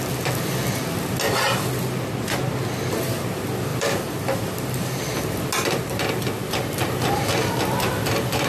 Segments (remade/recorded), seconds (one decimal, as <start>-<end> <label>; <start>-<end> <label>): 0.0-3.7 recorded; 3.7-4.2 remade; 4.2-8.5 recorded